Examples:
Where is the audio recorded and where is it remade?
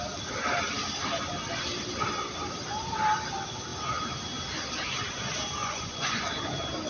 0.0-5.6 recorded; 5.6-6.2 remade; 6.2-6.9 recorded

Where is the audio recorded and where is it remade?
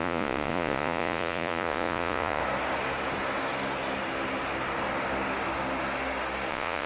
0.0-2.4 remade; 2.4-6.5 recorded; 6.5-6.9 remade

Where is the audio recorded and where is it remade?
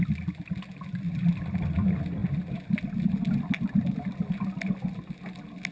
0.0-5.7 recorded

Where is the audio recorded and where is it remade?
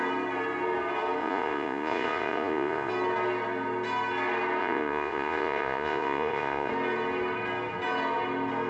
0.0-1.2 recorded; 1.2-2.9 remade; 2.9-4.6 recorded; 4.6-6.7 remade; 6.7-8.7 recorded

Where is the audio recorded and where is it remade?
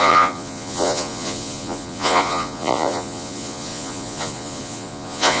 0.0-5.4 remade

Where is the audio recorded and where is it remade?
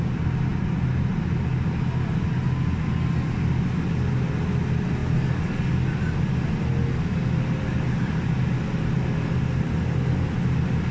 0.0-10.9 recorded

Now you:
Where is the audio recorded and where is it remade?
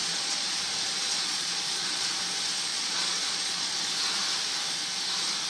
0.0-0.6 remade; 0.6-1.0 recorded; 1.0-2.1 remade; 2.1-2.7 recorded; 2.7-3.7 remade; 3.7-5.5 recorded